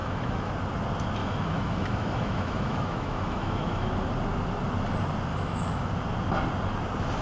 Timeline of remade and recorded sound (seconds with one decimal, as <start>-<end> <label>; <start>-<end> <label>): 0.0-0.5 remade; 0.5-1.2 recorded; 1.2-3.9 remade; 3.9-5.3 recorded; 5.3-5.9 remade; 5.9-7.2 recorded